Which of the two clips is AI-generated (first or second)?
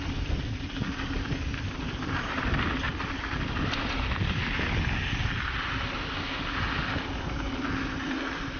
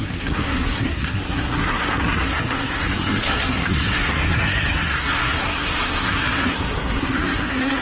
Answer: second